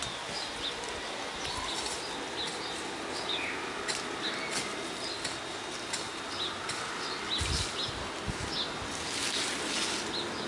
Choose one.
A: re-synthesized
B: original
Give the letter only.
B